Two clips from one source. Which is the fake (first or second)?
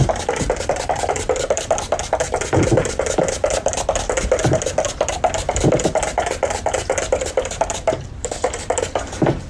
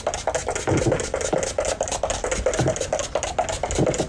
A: first